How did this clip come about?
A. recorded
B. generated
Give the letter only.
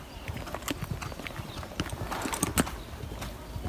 A